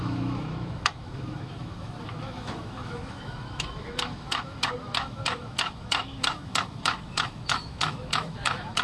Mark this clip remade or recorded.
remade